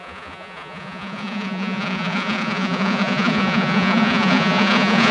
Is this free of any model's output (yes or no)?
no